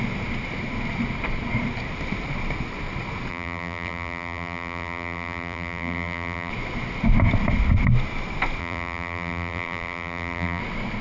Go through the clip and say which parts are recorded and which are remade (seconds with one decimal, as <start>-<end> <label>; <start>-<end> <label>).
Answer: 0.0-3.3 recorded; 3.3-6.5 remade; 6.5-8.6 recorded; 8.6-10.6 remade; 10.6-11.0 recorded